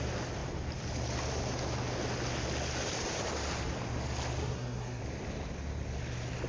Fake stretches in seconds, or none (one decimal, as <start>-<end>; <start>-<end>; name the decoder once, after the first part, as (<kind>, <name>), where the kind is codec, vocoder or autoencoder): 4.4-5.0 (codec, SNAC)